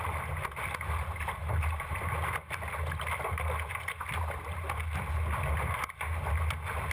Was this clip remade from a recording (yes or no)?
no